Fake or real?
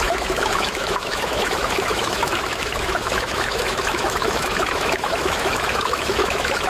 fake